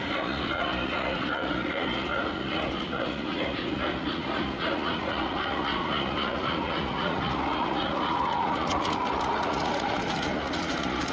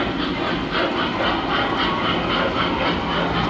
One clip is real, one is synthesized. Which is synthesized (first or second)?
first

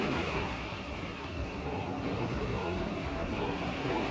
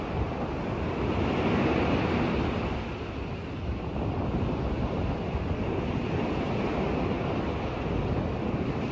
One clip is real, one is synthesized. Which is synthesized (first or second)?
first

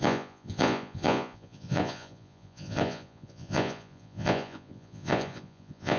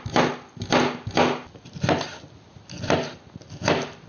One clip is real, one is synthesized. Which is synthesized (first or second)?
first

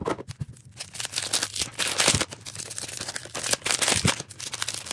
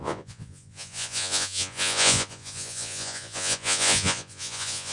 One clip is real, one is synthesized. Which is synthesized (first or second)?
second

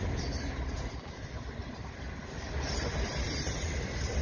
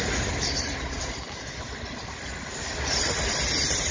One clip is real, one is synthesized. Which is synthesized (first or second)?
second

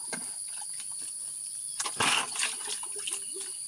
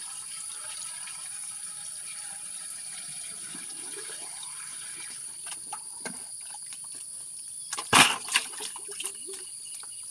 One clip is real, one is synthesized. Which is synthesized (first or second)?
second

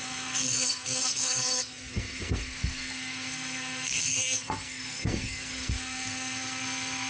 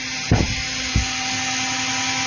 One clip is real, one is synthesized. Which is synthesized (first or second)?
first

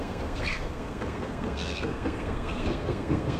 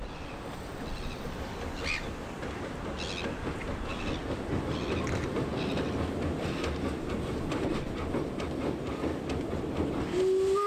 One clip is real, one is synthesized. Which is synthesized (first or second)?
first